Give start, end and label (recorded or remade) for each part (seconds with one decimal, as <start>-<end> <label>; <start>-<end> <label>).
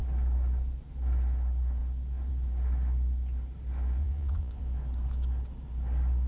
0.0-4.0 recorded; 4.0-4.6 remade; 4.6-6.3 recorded